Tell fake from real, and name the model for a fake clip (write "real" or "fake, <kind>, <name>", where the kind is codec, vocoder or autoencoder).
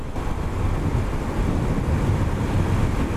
real